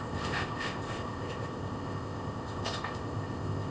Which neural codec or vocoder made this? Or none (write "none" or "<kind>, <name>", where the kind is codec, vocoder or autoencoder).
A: codec, ZipCodec